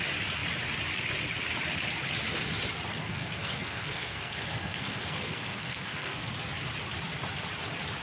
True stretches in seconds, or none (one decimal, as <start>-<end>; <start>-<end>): 0.0-2.9; 6.3-8.0

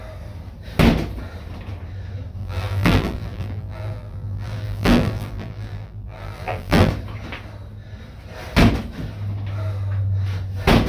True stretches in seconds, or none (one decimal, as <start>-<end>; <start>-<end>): 0.0-2.4; 6.9-10.9

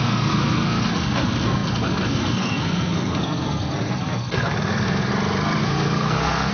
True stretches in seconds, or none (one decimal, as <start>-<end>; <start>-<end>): 5.1-5.6

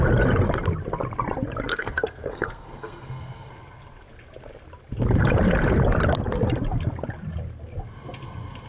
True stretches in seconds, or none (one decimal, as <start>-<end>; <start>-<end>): 0.0-1.7; 3.5-8.7

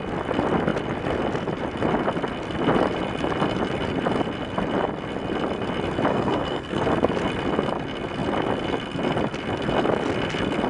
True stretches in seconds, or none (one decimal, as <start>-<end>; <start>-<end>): 0.0-6.1; 6.8-10.7

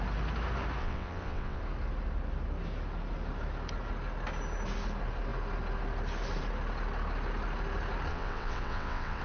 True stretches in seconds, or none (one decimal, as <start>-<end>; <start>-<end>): 0.0-0.8; 1.6-8.1

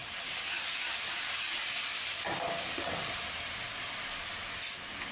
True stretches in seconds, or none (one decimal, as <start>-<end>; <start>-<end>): 0.0-5.1

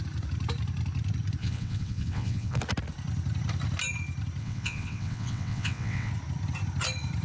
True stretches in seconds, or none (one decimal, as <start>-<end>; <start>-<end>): 0.0-1.4; 2.6-4.4; 6.1-7.2